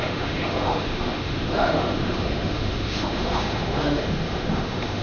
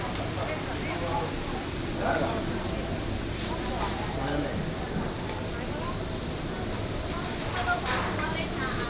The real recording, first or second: second